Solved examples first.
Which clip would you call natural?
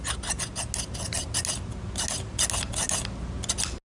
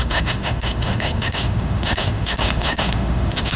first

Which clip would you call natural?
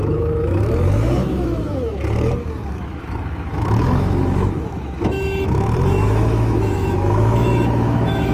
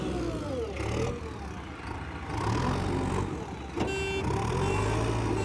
second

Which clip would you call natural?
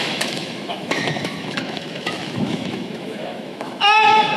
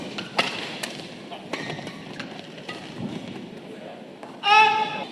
second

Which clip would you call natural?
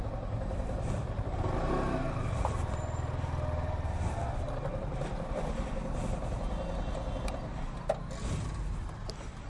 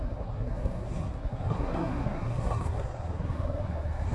first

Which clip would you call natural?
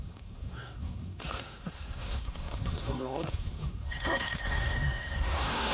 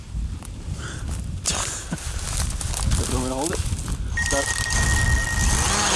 second